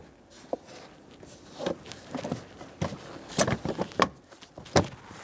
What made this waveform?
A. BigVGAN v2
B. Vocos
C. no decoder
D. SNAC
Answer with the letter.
C